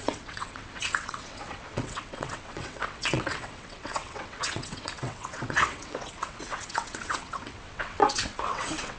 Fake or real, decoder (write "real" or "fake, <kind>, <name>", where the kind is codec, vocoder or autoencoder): fake, vocoder, WaveNeXt